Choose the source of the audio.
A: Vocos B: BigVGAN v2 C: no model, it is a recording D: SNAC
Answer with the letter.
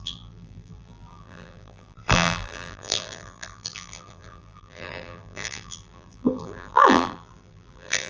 B